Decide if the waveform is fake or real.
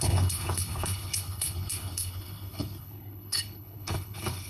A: fake